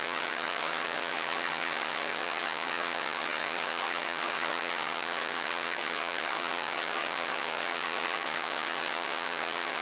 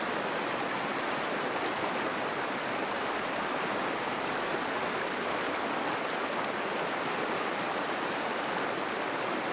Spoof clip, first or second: first